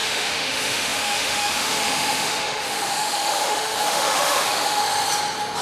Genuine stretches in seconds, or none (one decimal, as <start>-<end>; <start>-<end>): 4.8-5.6